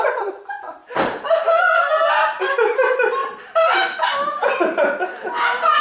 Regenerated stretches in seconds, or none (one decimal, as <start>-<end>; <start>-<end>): 0.8-1.9; 3.2-4.5